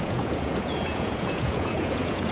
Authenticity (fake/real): fake